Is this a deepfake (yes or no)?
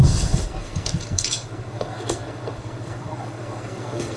yes